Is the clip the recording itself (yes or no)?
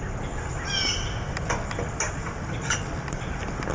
yes